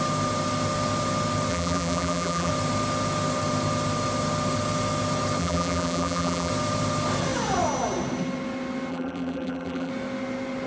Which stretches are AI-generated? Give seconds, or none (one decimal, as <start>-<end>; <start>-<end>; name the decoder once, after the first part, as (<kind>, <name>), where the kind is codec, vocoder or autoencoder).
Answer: 1.5-2.5 (vocoder, BigVGAN v2); 5.4-6.5; 8.9-9.9